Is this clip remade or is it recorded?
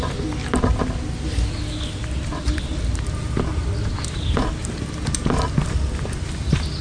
recorded